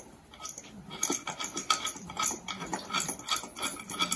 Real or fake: real